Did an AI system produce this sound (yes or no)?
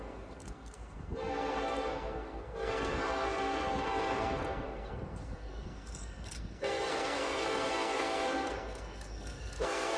yes